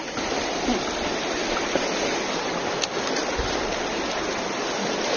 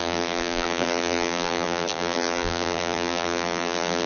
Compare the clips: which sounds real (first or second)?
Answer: first